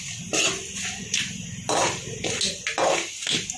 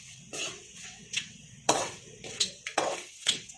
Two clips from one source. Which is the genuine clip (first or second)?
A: first